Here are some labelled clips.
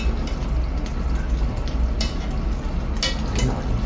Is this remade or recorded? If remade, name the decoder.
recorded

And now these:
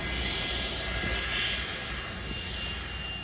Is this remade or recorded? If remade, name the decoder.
recorded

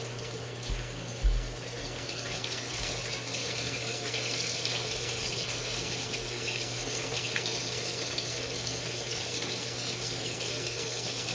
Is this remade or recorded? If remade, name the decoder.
remade, codec, SNAC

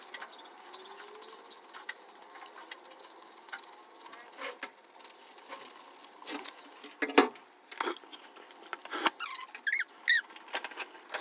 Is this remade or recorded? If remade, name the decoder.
recorded